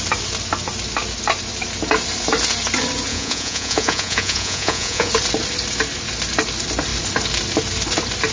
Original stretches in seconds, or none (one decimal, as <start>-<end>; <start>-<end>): 0.0-3.1; 5.1-8.3

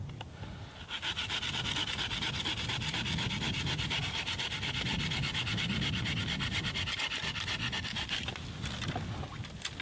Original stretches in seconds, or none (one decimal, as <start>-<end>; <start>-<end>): 0.0-9.8

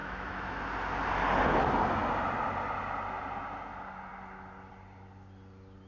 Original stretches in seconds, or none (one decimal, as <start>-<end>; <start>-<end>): 0.6-5.9

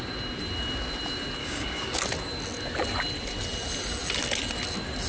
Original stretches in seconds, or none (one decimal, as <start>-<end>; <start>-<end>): 0.0-1.4; 2.0-5.1

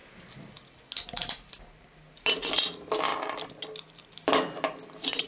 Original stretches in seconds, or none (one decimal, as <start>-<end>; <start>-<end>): 0.0-5.3

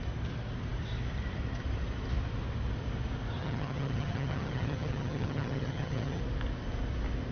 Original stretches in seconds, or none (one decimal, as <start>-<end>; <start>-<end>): 0.0-3.4; 6.2-7.3

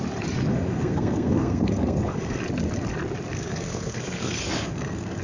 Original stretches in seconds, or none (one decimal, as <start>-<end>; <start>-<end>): 0.0-0.5; 2.4-3.3